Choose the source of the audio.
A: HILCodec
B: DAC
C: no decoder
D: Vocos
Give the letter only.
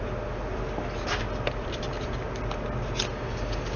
C